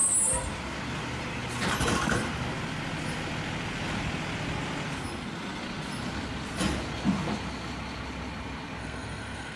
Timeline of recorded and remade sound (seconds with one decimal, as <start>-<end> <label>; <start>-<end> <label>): 0.0-8.8 recorded; 8.8-9.6 remade